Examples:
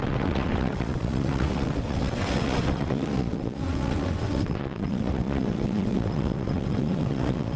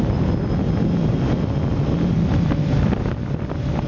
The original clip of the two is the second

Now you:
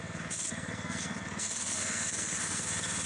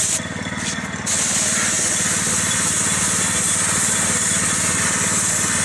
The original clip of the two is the second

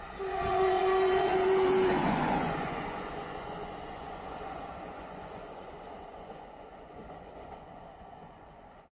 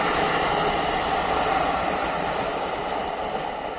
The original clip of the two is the second